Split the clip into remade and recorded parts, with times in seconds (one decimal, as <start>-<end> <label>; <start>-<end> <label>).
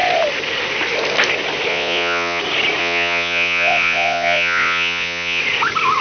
0.0-1.7 recorded; 1.7-2.4 remade; 2.4-2.8 recorded; 2.8-5.4 remade; 5.4-6.0 recorded